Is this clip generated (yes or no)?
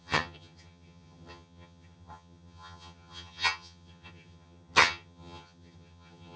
yes